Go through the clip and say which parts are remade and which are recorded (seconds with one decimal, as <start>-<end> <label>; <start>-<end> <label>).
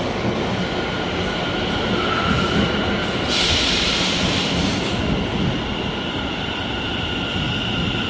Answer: 0.0-3.0 recorded; 3.0-4.8 remade; 4.8-5.3 recorded; 5.3-6.6 remade; 6.6-8.1 recorded